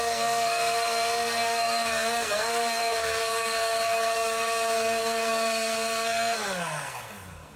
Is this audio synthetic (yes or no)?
yes